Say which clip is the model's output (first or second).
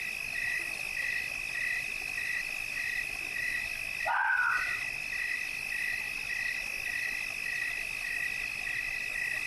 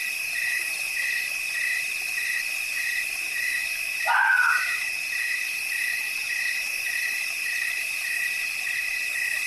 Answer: second